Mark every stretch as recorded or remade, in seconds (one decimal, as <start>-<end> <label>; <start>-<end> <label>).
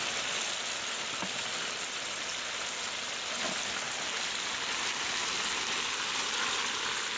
0.0-7.2 recorded